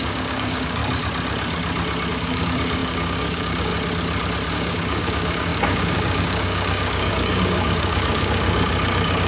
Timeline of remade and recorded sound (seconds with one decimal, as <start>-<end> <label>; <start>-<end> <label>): 0.0-0.8 remade; 0.8-2.1 recorded; 2.1-3.7 remade; 3.7-4.5 recorded; 4.5-9.3 remade